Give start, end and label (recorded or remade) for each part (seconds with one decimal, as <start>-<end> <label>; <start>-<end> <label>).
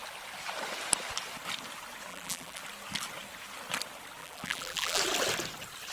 0.0-2.1 recorded; 2.1-2.6 remade; 2.6-4.2 recorded; 4.2-5.0 remade; 5.0-5.9 recorded